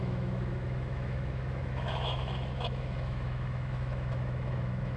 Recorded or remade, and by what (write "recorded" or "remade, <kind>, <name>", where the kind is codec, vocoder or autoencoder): remade, autoencoder, DAC-VAE